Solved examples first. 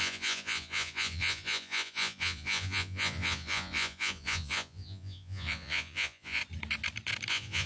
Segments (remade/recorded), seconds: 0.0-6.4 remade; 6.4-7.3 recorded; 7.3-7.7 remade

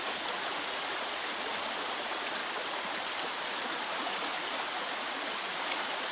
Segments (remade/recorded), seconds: 0.0-2.4 remade; 2.4-3.4 recorded; 3.4-6.1 remade

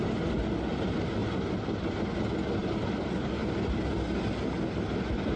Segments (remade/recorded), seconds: 0.0-5.4 recorded

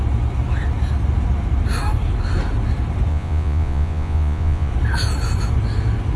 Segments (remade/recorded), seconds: 0.0-3.1 recorded; 3.1-4.7 remade; 4.7-6.2 recorded

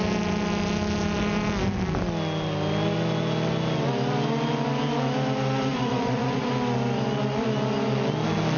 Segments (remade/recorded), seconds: 0.0-5.7 recorded; 5.7-6.5 remade; 6.5-8.6 recorded

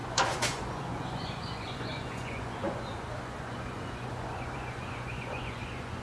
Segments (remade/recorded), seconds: 0.0-6.0 remade

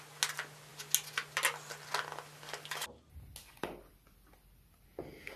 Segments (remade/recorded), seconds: 0.0-5.4 recorded

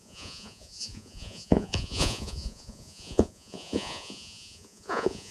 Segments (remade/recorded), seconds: 0.0-5.3 remade